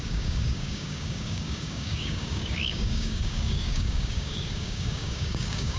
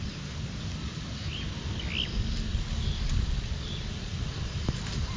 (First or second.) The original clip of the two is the second